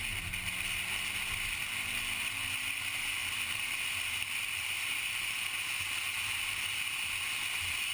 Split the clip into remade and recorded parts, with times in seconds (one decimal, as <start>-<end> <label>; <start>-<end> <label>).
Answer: 0.0-7.9 recorded